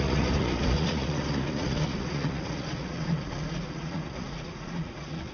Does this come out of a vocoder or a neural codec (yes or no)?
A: yes